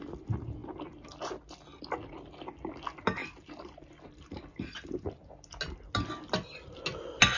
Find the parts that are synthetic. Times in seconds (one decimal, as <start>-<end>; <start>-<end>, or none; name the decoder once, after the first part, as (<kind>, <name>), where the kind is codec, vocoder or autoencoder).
3.2-5.2 (vocoder, BigVGAN v2)